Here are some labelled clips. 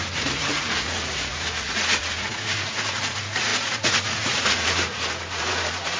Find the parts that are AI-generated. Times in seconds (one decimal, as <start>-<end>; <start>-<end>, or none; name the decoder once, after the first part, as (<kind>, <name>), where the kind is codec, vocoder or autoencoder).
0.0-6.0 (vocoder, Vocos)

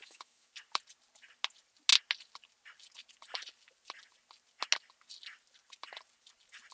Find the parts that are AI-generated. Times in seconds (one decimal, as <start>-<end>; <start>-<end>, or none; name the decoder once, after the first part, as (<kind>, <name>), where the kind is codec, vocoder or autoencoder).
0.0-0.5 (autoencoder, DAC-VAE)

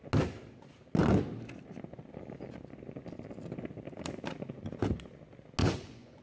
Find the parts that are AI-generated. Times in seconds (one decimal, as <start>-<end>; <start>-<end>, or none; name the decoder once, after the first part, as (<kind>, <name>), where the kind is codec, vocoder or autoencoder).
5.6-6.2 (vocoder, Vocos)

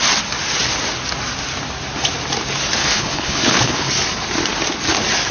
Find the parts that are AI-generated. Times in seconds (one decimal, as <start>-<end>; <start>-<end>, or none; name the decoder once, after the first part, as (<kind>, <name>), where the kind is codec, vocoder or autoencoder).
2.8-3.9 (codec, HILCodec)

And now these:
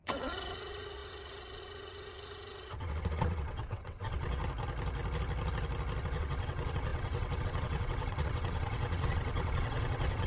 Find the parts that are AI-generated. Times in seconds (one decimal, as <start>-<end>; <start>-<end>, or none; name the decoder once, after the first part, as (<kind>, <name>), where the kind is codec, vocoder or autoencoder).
0.0-4.4 (vocoder, WaveNeXt); 6.0-10.3